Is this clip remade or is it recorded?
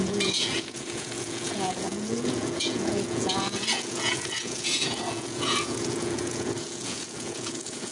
remade